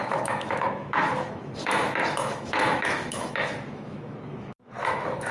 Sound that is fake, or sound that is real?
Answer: fake